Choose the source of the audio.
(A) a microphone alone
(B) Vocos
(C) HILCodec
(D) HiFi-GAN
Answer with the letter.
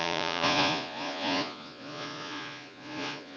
B